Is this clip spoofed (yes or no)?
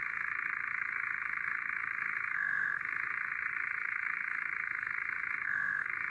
yes